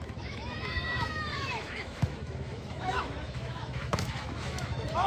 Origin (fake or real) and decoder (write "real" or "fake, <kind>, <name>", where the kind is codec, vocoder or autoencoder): fake, autoencoder, DAC-VAE